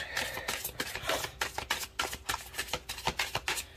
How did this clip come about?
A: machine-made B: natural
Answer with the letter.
B